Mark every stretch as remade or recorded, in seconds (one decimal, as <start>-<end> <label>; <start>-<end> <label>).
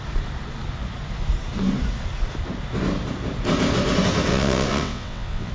0.0-4.3 recorded; 4.3-5.5 remade